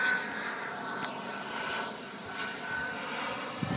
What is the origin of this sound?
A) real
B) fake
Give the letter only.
A